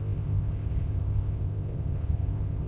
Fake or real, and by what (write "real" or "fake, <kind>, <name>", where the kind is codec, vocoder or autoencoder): fake, codec, ZipCodec